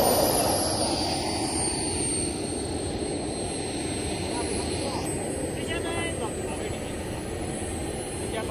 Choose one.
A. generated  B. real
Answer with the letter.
B